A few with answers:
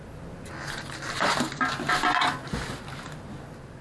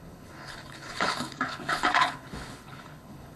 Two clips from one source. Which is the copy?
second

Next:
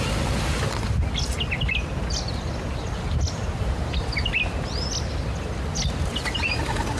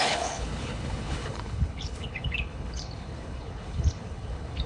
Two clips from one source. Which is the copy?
second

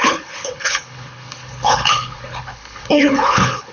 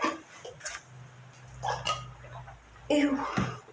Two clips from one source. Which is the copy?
first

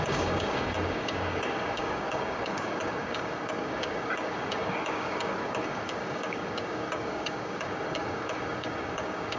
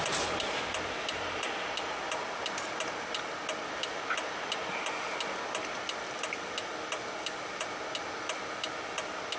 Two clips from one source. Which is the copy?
first